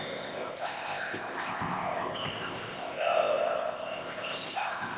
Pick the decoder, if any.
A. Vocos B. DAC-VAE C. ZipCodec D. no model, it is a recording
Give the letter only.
C